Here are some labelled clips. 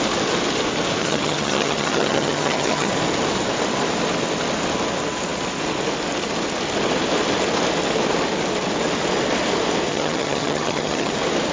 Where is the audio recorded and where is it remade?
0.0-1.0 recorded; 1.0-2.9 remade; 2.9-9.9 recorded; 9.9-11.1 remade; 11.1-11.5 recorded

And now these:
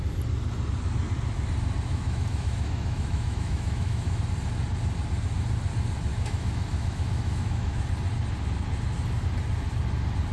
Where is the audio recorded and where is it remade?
0.0-1.9 recorded; 1.9-4.2 remade; 4.2-6.1 recorded; 6.1-7.8 remade; 7.8-10.3 recorded

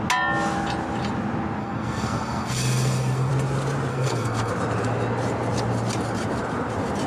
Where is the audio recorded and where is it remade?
0.0-1.6 recorded; 1.6-3.3 remade; 3.3-3.9 recorded; 3.9-4.5 remade; 4.5-7.1 recorded